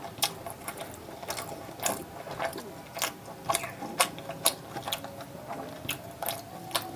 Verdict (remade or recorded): recorded